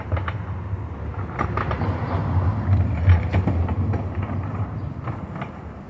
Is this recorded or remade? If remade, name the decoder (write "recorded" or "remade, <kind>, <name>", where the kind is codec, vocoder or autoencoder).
recorded